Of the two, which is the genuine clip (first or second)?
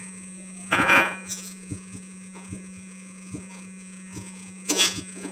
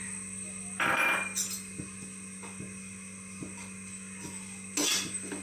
second